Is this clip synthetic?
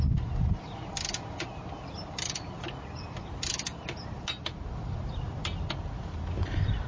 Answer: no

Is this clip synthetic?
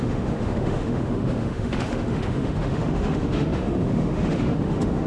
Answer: yes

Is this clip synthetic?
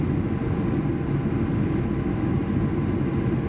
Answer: no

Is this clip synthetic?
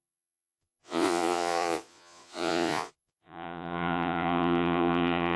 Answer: yes